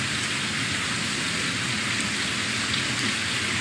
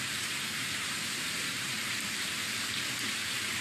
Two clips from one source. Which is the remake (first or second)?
second